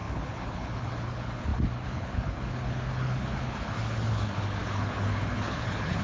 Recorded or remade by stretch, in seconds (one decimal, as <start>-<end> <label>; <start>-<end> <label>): 0.0-6.0 remade